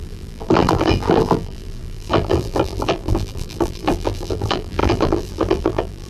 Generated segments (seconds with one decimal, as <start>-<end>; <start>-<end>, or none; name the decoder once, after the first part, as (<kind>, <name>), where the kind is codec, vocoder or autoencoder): 0.0-6.1 (vocoder, BigVGAN v2)